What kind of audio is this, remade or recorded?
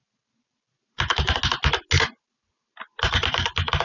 recorded